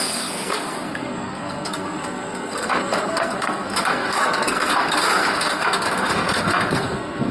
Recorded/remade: remade